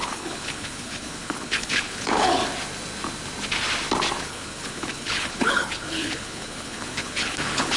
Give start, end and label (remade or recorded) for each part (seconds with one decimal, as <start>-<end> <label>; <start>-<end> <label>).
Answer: 0.0-2.4 remade; 2.4-4.2 recorded; 4.2-7.8 remade